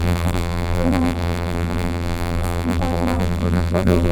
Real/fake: fake